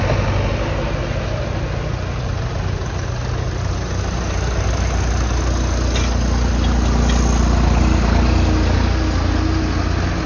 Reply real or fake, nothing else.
real